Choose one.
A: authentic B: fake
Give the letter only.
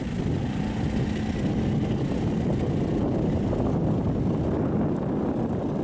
A